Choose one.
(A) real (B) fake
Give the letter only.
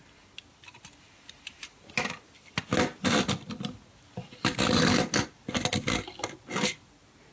A